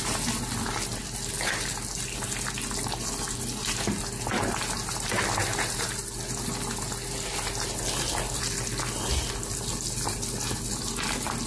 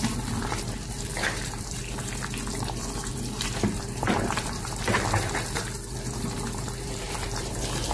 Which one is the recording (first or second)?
first